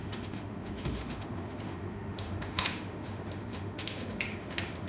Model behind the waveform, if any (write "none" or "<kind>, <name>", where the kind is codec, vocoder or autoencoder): autoencoder, DAC-VAE